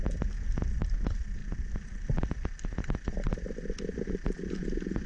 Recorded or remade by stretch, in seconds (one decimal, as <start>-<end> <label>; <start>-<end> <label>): 0.0-1.4 recorded; 1.4-4.5 remade; 4.5-5.1 recorded